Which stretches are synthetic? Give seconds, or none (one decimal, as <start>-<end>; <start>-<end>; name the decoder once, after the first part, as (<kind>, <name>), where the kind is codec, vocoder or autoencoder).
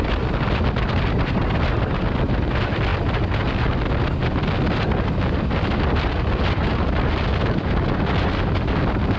none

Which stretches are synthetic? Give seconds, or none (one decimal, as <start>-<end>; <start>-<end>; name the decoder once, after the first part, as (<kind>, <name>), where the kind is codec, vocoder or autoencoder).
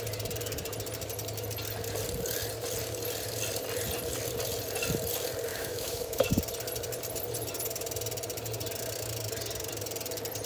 5.5-6.3 (autoencoder, DAC-VAE)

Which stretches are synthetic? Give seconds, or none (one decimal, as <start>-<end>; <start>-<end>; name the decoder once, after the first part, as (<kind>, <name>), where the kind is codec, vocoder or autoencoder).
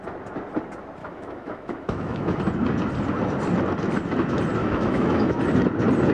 1.0-2.4 (autoencoder, DAC-VAE); 4.6-5.4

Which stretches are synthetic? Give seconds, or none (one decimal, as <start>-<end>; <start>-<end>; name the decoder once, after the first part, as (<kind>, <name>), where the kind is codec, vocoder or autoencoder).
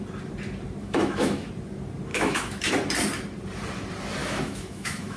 0.8-1.5 (autoencoder, DAC-VAE); 2.1-2.7; 4.2-5.2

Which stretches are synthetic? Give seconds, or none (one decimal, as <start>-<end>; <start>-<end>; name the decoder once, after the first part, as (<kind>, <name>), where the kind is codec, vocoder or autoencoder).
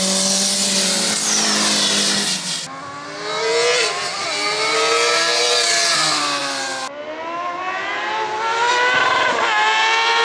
none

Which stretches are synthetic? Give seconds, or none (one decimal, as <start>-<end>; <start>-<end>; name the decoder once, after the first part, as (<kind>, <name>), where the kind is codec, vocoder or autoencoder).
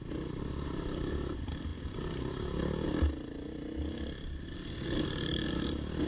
none